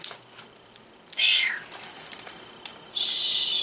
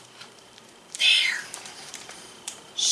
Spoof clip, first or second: second